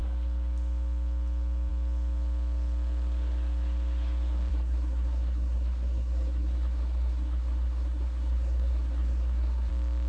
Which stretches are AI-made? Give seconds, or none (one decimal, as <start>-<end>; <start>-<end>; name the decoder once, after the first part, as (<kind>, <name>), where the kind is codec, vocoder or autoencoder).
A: 4.5-9.7 (codec, SNAC)